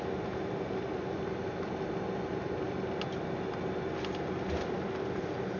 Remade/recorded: recorded